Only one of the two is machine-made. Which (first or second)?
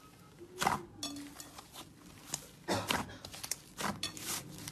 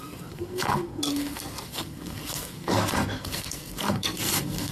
second